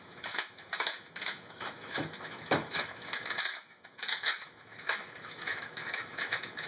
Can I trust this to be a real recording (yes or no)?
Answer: no